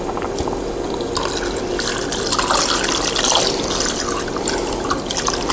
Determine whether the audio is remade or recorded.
recorded